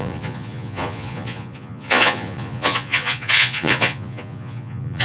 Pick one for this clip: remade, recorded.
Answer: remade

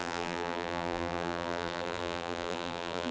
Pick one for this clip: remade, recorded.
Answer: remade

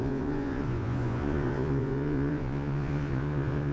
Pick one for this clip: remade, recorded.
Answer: remade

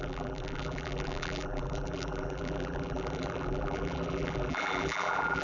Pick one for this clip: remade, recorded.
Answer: remade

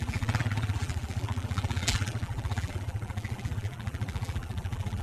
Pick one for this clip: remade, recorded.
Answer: remade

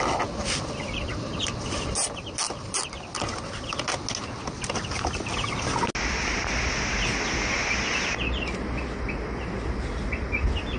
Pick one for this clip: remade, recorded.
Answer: recorded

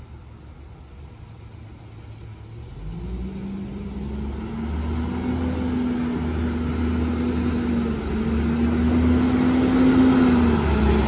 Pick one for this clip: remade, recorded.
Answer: recorded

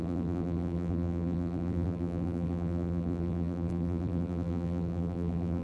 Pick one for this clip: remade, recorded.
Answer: remade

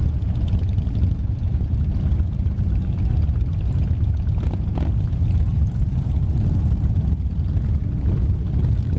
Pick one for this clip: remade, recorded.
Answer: recorded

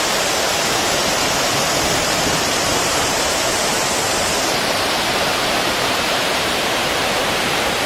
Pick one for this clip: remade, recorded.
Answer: remade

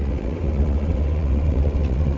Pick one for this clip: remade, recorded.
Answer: remade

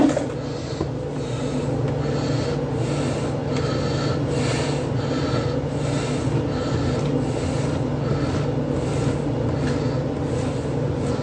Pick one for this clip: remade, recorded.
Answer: recorded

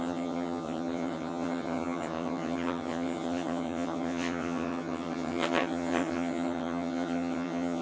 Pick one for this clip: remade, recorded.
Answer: remade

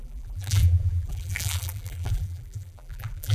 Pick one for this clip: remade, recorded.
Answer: remade